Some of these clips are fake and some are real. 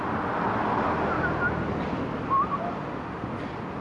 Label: real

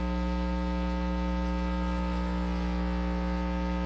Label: real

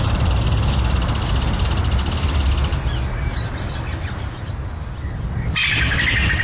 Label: real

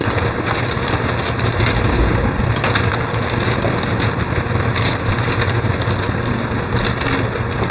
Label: real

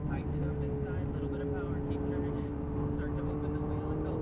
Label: real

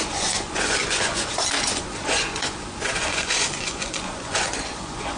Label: fake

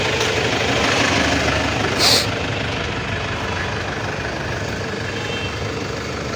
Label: real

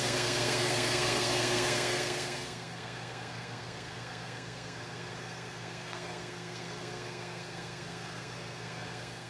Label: fake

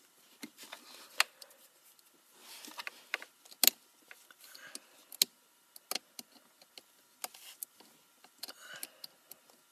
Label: real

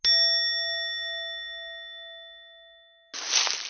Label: real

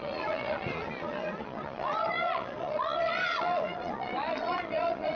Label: fake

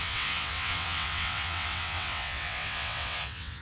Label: fake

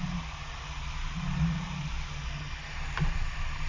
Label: real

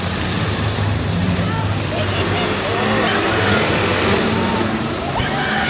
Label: fake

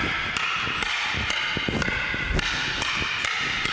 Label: real